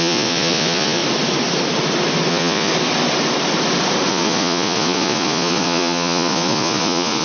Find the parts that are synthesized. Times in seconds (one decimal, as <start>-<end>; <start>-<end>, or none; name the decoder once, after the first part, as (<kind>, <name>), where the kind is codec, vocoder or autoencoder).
0.0-1.0 (vocoder, Vocos); 2.3-2.7; 4.1-7.2